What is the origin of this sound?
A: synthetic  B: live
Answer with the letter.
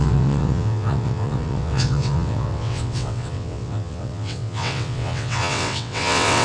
A